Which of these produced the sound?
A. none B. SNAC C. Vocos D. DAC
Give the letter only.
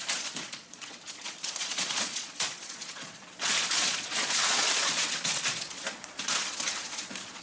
C